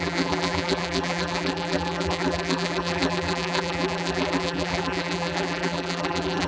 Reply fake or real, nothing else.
fake